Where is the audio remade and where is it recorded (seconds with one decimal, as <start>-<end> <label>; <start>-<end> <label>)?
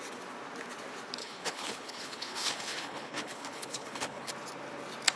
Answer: 0.0-1.2 recorded; 1.2-4.3 remade; 4.3-5.2 recorded